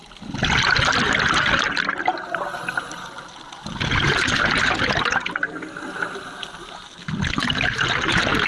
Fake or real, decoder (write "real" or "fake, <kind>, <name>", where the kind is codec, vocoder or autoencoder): real